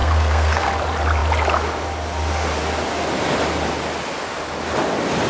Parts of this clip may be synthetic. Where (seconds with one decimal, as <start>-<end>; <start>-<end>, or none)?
0.0-0.7